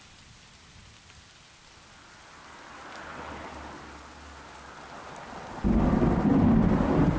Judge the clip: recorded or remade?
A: recorded